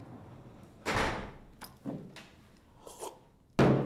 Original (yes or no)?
yes